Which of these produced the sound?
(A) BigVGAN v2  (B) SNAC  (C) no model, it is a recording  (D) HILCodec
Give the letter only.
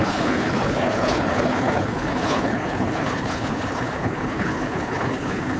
D